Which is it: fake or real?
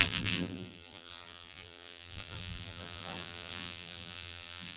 fake